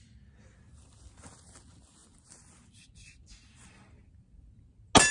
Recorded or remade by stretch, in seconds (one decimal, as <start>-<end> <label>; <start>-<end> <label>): 0.0-5.1 recorded